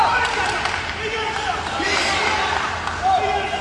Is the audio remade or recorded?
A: recorded